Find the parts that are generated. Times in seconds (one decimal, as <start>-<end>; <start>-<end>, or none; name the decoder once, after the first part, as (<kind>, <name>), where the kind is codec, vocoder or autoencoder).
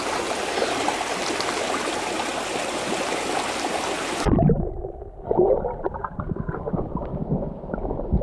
2.3-7.2 (vocoder, BigVGAN v2)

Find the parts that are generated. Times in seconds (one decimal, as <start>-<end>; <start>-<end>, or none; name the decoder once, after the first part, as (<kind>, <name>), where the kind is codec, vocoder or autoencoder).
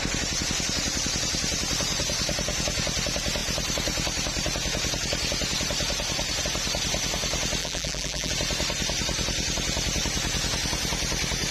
7.6-8.3 (vocoder, BigVGAN v2)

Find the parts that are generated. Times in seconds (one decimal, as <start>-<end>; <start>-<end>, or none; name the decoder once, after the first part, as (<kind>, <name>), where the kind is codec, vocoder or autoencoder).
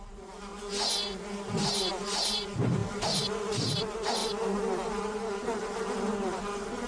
0.0-0.5 (vocoder, BigVGAN v2); 1.5-6.9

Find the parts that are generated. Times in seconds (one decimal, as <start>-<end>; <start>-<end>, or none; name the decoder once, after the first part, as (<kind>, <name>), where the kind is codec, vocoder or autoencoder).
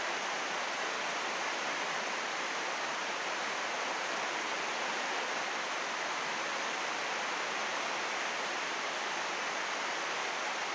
0.0-7.7 (vocoder, BigVGAN v2); 8.6-10.7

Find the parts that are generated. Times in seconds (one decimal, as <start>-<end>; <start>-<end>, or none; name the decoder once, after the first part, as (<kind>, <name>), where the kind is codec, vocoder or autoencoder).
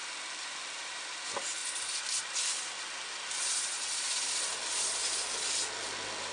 none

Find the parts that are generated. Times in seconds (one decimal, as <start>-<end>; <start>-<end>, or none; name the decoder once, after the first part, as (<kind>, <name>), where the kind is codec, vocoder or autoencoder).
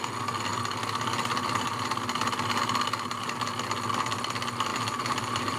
4.7-5.6 (vocoder, BigVGAN v2)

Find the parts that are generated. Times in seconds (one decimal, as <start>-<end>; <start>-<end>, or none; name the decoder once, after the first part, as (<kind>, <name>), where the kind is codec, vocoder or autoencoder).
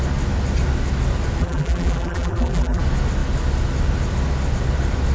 1.4-2.8 (vocoder, BigVGAN v2)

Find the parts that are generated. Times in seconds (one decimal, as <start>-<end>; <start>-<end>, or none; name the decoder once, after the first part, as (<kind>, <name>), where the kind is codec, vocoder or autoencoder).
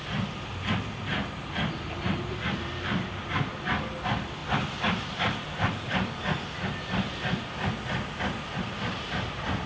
4.4-9.7 (vocoder, BigVGAN v2)